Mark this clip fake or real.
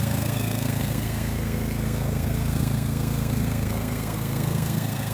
fake